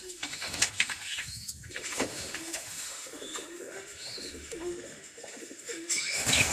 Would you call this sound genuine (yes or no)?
no